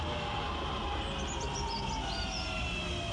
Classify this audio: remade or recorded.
recorded